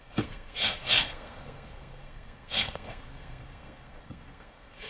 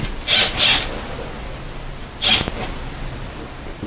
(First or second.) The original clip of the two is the second